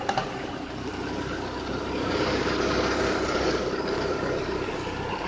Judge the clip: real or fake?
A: fake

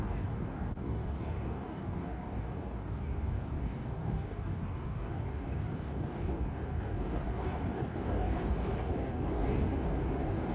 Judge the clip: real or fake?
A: fake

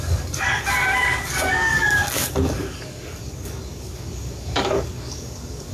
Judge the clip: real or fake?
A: fake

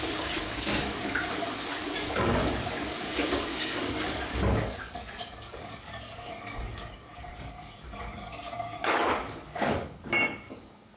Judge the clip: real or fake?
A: fake